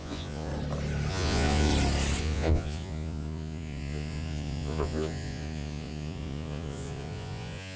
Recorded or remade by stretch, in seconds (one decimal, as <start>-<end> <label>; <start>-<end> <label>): 0.0-0.5 remade; 0.5-1.1 recorded; 1.1-1.7 remade; 1.7-2.2 recorded; 2.2-7.8 remade